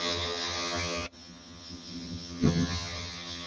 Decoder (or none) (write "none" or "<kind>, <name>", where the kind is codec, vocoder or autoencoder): vocoder, HiFi-GAN